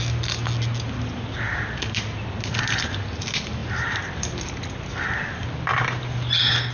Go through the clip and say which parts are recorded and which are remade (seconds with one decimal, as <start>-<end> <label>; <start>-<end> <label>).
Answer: 0.0-3.6 recorded; 3.6-5.2 remade; 5.2-6.7 recorded